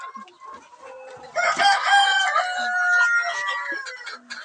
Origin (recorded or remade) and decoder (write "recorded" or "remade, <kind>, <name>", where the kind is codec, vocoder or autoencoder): recorded